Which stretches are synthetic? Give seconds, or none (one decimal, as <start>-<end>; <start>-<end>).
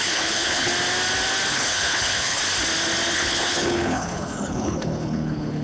0.0-0.7; 1.5-2.4; 3.1-5.6